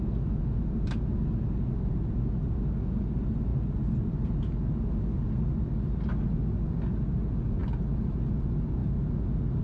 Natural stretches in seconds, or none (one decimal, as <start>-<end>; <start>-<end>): 0.0-9.6